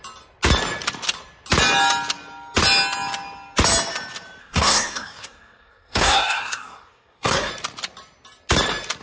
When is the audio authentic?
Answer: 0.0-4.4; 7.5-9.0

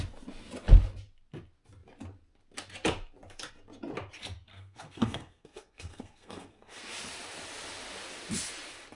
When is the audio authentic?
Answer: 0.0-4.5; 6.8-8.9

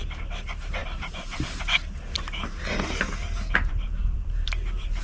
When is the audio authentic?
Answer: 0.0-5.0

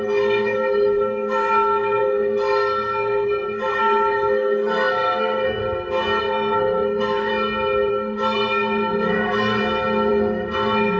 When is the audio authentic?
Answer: 5.6-6.2; 7.3-7.9; 9.6-10.1